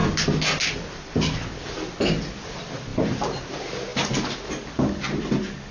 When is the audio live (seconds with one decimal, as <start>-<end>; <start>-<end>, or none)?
0.0-5.7